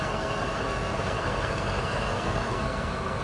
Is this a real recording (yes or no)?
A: no